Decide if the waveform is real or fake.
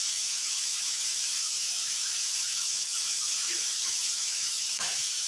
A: fake